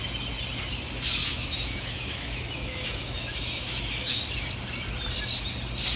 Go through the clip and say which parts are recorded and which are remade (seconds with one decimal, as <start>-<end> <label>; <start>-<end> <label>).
0.0-1.2 recorded; 1.2-4.2 remade; 4.2-6.0 recorded